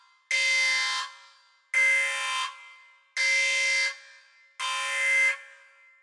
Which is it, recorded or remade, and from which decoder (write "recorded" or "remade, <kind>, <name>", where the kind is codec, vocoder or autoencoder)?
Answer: recorded